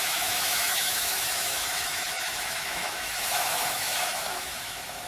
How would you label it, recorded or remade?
remade